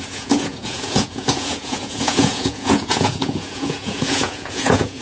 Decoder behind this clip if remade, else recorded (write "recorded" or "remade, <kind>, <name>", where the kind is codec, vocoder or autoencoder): remade, vocoder, Vocos